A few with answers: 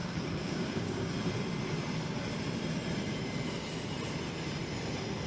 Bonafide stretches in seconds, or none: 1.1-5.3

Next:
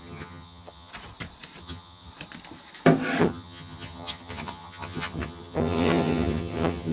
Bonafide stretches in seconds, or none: 0.9-1.6; 2.1-3.2

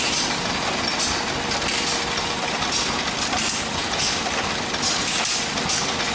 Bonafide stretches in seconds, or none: 0.0-6.1

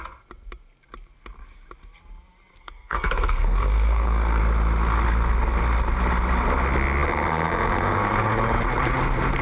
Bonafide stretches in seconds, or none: 0.0-2.5; 4.4-9.4